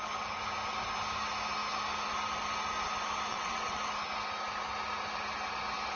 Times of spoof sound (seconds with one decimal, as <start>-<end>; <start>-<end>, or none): 3.3-3.8